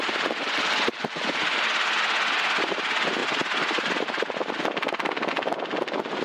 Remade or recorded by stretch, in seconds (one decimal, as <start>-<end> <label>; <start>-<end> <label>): 0.0-6.2 recorded